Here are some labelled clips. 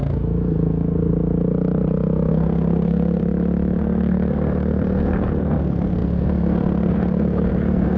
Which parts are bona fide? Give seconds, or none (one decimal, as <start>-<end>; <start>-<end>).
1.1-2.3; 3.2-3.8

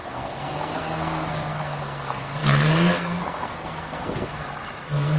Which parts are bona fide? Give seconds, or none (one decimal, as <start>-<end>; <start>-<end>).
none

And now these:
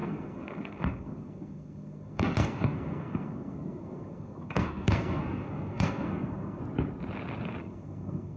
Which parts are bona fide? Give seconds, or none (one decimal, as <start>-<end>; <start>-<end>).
6.6-7.6

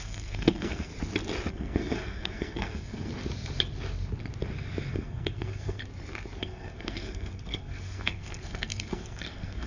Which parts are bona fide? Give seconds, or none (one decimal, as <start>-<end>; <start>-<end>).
0.9-1.5; 3.1-4.9; 5.8-6.4

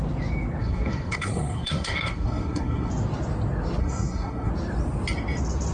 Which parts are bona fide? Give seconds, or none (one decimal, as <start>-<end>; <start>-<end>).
0.0-0.6; 2.9-3.8; 4.5-5.7